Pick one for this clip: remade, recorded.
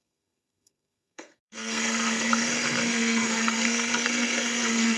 remade